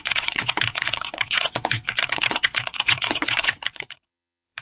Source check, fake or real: fake